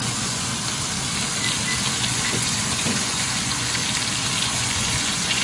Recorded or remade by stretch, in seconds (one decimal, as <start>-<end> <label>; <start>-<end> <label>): 0.0-0.5 remade; 0.5-1.9 recorded; 1.9-3.8 remade; 3.8-4.3 recorded; 4.3-5.4 remade